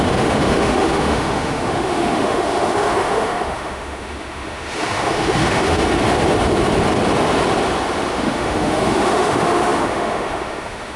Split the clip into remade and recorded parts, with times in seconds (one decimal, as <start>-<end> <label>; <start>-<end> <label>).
0.0-5.8 remade; 5.8-8.1 recorded; 8.1-11.0 remade